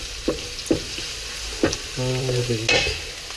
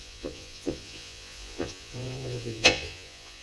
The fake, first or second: second